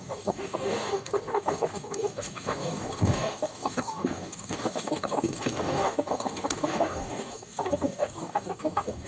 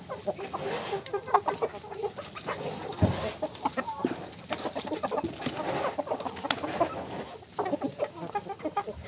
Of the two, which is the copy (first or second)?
first